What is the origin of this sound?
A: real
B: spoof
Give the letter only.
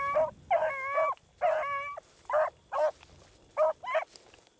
A